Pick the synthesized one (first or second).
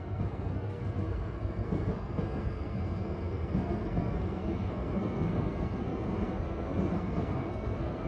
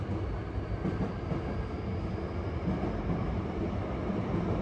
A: first